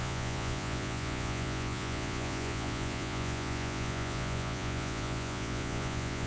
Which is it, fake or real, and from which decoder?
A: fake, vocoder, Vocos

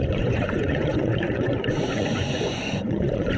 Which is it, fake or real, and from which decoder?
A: fake, vocoder, Vocos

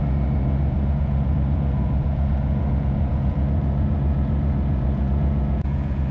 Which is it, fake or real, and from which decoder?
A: fake, vocoder, Vocos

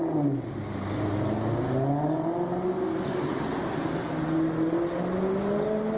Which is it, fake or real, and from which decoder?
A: real